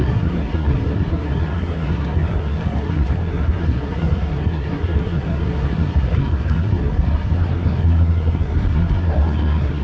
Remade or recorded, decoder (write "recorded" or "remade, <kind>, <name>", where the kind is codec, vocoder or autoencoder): remade, codec, SNAC